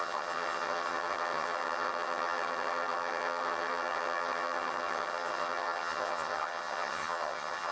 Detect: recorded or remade remade